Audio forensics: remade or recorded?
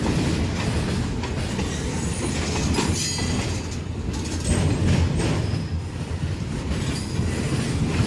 recorded